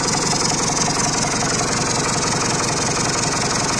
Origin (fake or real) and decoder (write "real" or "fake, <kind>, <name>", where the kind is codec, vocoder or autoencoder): real